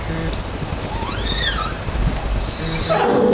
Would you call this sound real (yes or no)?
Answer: yes